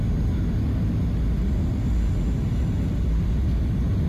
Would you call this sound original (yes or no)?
yes